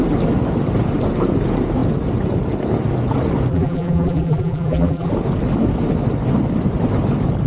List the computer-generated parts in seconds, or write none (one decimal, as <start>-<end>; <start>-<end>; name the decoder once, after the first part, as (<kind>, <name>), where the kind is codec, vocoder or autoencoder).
3.5-5.1 (vocoder, BigVGAN v2)